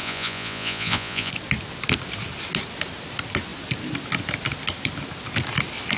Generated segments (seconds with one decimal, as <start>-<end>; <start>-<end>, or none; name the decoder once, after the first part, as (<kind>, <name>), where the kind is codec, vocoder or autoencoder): 0.0-1.3 (vocoder, Vocos)